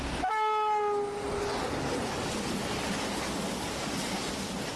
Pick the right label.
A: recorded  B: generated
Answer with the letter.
A